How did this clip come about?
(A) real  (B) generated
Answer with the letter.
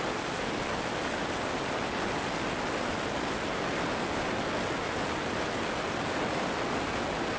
A